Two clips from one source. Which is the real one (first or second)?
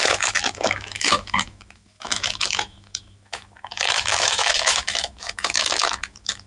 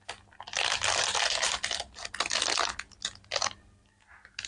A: second